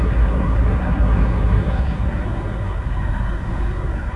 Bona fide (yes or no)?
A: no